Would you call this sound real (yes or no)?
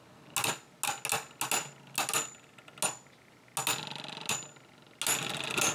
yes